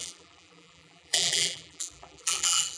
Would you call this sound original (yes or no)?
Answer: no